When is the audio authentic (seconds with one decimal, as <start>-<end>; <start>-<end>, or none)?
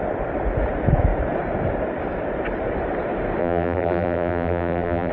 0.0-3.4